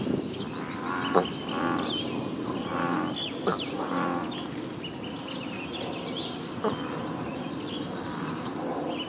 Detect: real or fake real